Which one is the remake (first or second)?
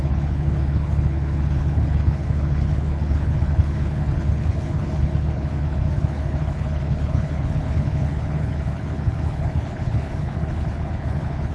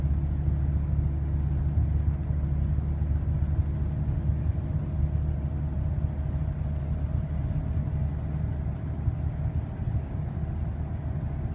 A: first